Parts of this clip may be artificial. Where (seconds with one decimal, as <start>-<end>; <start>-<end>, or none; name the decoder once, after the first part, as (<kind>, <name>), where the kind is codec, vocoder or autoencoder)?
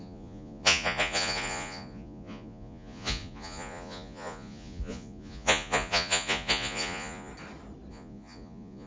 0.0-7.3 (vocoder, Vocos); 7.9-8.9